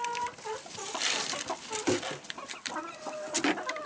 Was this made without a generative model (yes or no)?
no